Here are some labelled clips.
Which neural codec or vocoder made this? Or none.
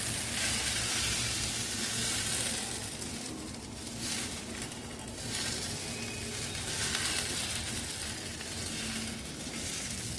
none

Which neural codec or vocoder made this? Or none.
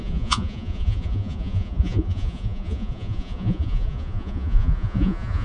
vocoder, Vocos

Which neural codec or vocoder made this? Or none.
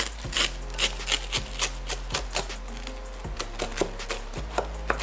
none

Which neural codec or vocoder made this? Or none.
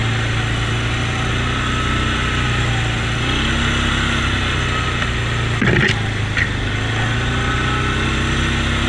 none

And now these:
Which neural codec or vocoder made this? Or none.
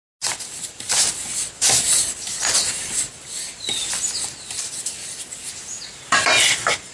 none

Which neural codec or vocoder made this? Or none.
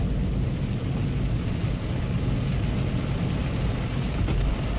none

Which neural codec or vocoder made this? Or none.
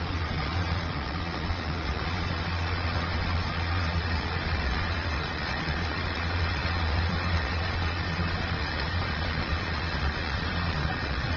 vocoder, Vocos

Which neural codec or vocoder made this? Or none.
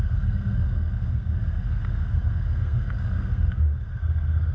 codec, SNAC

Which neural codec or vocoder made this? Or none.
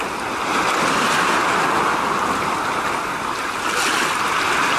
none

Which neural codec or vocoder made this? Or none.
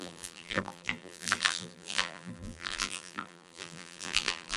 vocoder, BigVGAN v2